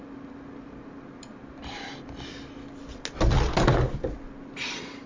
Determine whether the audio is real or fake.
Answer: real